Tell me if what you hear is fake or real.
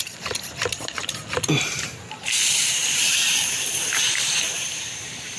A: fake